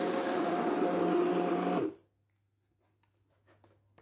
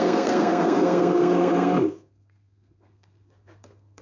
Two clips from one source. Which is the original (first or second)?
first